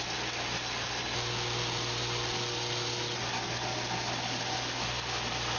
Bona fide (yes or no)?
yes